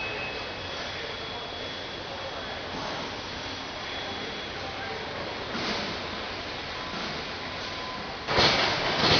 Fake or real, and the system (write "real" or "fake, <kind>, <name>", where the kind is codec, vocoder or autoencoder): real